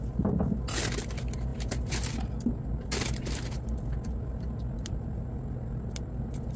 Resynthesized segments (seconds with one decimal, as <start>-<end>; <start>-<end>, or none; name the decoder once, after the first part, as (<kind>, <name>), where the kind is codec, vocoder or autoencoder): none